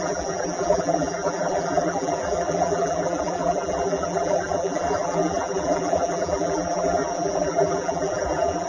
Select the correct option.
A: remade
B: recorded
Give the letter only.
A